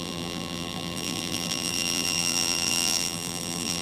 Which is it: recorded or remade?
remade